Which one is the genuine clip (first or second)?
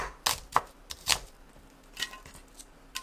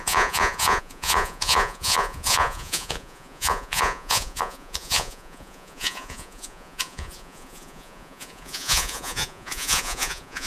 first